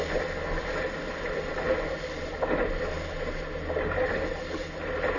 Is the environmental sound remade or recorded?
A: recorded